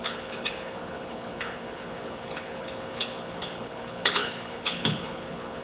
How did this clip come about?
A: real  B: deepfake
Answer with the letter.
B